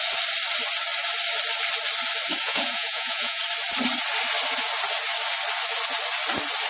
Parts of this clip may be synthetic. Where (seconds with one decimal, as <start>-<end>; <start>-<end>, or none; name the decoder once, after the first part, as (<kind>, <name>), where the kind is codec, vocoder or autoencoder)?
2.4-3.4 (vocoder, Vocos)